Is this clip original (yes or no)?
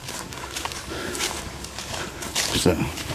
no